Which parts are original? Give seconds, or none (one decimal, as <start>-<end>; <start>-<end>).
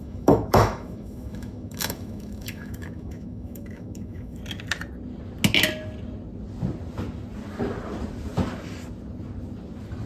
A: 4.4-10.1